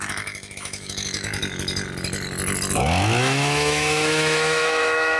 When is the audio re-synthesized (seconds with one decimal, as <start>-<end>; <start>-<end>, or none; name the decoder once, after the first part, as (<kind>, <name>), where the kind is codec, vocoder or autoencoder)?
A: 0.0-1.4 (autoencoder, DAC-VAE); 3.2-5.2